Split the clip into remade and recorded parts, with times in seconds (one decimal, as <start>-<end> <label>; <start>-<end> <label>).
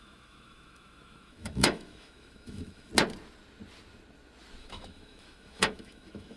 0.0-2.9 remade; 2.9-4.6 recorded; 4.6-6.4 remade